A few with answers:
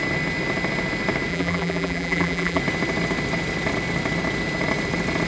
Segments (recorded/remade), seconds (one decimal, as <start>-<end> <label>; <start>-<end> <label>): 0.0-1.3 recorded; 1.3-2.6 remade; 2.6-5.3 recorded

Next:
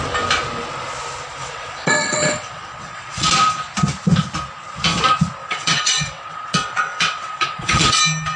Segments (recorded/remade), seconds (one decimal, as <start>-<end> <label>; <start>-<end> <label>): 0.0-1.4 recorded; 1.4-3.3 remade; 3.3-5.4 recorded; 5.4-8.0 remade; 8.0-8.4 recorded

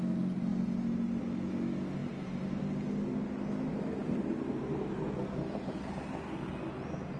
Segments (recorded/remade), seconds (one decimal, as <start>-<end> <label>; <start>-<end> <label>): 0.0-2.0 recorded; 2.0-2.6 remade; 2.6-7.2 recorded

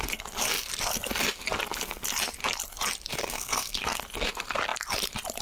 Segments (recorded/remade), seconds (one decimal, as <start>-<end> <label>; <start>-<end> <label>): 0.0-3.1 recorded; 3.1-4.0 remade; 4.0-5.4 recorded

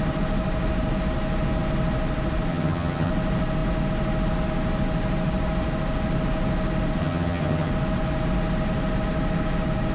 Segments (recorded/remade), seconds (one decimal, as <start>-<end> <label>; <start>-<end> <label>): 0.0-2.5 recorded; 2.5-3.1 remade; 3.1-7.0 recorded; 7.0-7.7 remade; 7.7-9.9 recorded